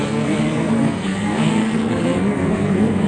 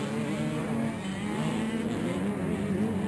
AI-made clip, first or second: first